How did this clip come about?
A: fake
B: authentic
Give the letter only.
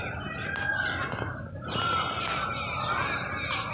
B